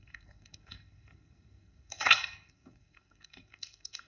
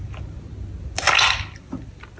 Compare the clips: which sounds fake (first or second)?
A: first